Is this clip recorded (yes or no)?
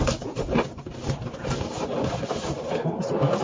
yes